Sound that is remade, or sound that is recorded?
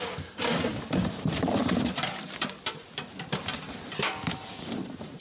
remade